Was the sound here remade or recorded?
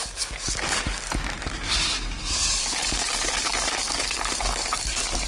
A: remade